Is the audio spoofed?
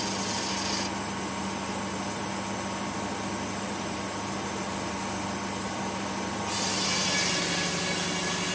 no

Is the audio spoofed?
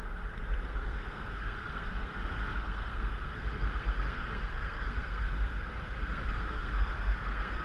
yes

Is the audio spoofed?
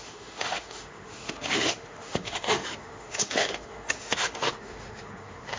yes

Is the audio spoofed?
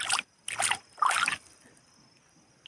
no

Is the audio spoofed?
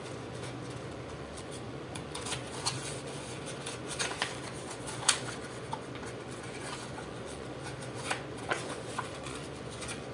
yes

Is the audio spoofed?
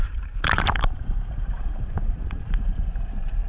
yes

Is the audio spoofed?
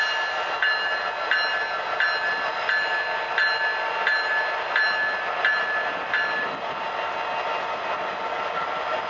no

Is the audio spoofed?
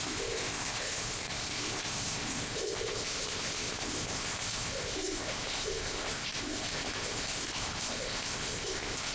yes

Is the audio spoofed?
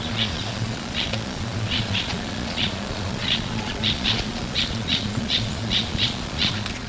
yes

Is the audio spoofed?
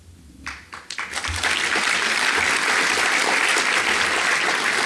no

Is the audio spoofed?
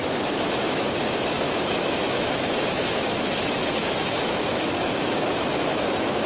yes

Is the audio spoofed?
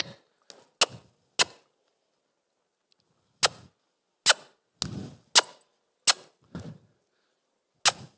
no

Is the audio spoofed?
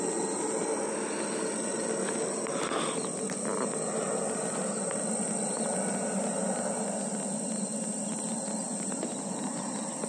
no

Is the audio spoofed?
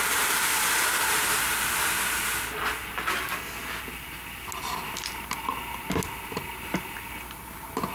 no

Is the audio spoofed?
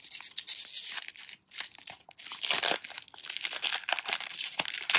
no